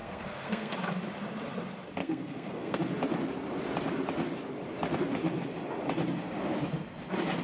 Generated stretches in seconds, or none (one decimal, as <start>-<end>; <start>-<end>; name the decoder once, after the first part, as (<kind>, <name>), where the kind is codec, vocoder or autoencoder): 0.0-0.7 (codec, SNAC); 2.0-2.8